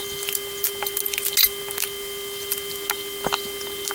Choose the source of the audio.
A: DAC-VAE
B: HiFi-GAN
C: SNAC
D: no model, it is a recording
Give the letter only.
D